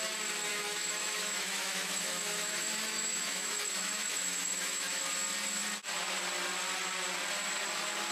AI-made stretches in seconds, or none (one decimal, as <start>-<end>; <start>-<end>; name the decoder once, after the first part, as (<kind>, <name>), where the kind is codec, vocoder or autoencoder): 0.5-5.0 (autoencoder, DAC-VAE)